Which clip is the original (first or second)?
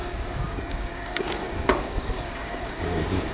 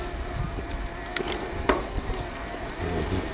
second